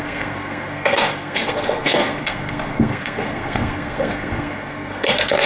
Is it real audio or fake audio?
fake